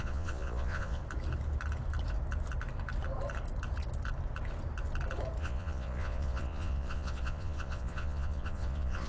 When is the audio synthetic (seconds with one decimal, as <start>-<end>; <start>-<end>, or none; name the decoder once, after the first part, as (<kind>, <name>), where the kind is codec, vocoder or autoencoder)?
0.0-1.0 (vocoder, Vocos); 5.4-9.1